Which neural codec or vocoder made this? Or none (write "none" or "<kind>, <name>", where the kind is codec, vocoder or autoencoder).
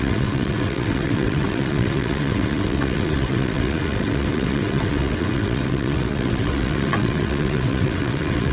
vocoder, WaveNeXt